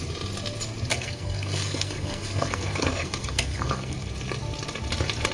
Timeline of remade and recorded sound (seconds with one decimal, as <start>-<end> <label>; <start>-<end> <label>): 0.0-0.9 recorded; 0.9-4.1 remade; 4.1-5.3 recorded